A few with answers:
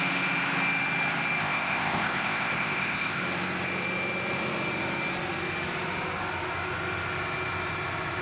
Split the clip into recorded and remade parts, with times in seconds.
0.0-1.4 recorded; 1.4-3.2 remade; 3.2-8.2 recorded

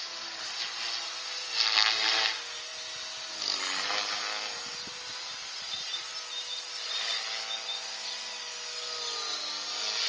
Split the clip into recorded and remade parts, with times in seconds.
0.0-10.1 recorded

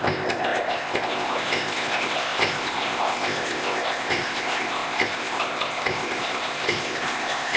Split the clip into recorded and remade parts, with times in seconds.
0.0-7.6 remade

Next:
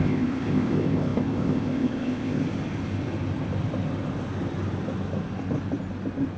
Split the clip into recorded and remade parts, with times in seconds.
0.0-2.4 remade; 2.4-6.4 recorded

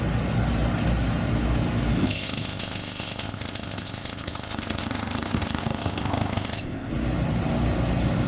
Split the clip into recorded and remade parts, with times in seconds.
0.0-2.0 recorded; 2.0-6.9 remade; 6.9-8.3 recorded